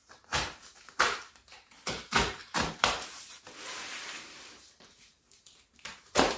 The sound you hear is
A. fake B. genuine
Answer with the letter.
A